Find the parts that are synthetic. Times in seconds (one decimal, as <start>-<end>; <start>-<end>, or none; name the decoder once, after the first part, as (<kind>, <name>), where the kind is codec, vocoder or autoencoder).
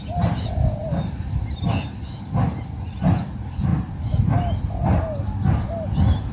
none